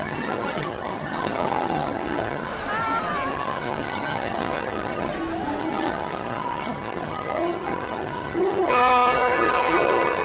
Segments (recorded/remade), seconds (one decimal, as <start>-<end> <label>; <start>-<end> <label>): 0.0-2.5 remade; 2.5-3.3 recorded; 3.3-5.1 remade; 5.1-5.6 recorded; 5.6-10.2 remade